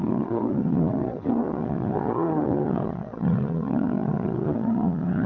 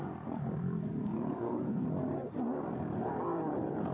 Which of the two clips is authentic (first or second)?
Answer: second